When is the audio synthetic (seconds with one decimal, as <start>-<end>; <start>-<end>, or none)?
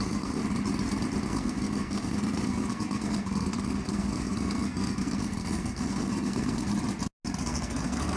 0.0-0.4; 1.2-6.7; 7.4-8.2